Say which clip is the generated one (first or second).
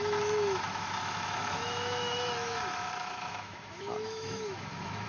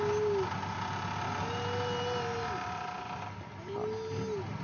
first